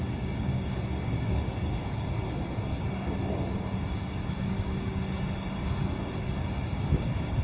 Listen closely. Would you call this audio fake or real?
fake